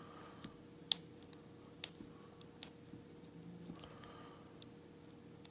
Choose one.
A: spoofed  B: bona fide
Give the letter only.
B